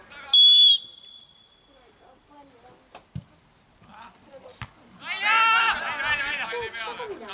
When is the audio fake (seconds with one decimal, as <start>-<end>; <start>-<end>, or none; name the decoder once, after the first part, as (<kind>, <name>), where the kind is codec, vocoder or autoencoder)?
none

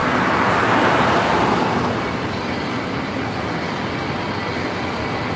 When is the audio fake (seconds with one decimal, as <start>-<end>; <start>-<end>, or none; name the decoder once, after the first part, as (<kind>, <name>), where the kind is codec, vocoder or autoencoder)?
none

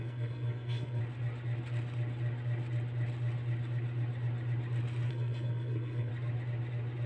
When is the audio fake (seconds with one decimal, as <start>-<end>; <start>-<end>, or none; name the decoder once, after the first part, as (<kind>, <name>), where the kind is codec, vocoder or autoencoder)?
0.0-1.0 (codec, SNAC); 5.1-6.1

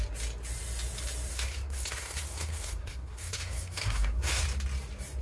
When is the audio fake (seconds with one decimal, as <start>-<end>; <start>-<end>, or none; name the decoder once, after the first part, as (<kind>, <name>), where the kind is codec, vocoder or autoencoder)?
1.3-4.4 (codec, SNAC)

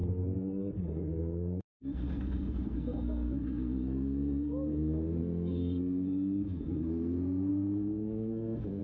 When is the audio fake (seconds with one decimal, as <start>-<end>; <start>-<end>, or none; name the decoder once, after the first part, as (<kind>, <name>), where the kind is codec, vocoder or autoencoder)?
0.0-8.8 (codec, SNAC)

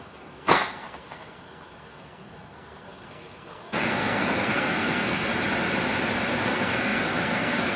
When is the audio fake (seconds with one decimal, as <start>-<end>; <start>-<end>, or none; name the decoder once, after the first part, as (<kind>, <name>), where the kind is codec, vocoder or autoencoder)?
0.0-5.3 (codec, SNAC); 6.4-7.8